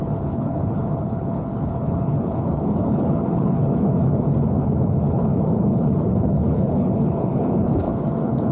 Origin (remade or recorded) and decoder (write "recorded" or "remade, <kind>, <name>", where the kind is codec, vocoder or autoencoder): remade, codec, HILCodec